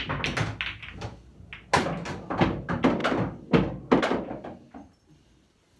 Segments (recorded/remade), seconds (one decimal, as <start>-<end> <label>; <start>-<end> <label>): 0.0-5.8 recorded